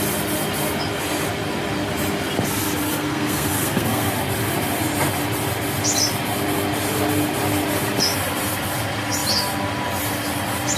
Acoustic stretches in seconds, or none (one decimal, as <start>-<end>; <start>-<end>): 0.0-2.9; 4.1-10.8